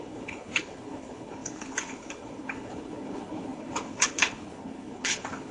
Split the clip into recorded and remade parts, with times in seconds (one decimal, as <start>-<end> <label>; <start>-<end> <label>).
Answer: 0.0-5.5 remade